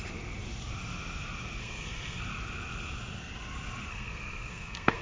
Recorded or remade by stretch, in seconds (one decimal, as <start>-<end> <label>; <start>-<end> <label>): 0.0-1.6 recorded; 1.6-2.2 remade; 2.2-3.9 recorded; 3.9-5.0 remade